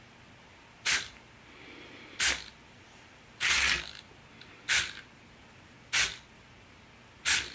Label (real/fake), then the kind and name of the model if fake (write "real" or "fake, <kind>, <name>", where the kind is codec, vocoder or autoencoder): real